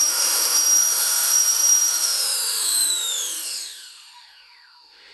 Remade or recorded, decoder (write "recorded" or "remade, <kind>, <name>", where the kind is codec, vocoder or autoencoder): remade, autoencoder, DAC-VAE